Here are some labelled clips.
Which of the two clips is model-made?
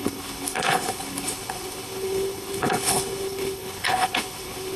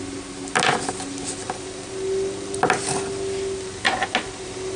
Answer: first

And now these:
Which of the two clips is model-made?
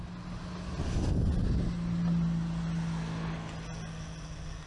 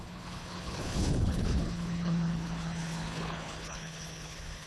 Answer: second